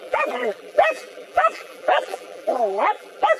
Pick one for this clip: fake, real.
fake